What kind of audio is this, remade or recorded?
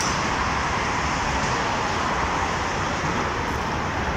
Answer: recorded